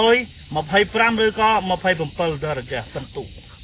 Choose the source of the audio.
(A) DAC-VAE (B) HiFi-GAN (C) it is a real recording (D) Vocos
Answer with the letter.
C